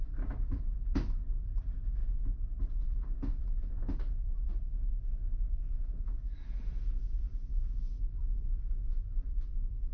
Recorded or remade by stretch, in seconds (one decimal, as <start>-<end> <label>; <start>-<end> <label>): 0.0-9.9 recorded